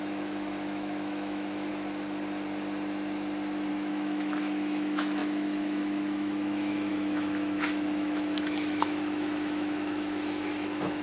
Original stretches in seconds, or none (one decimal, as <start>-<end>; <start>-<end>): 1.7-3.7